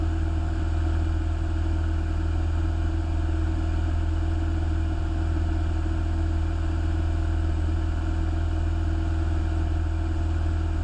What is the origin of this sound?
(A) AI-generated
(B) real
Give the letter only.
B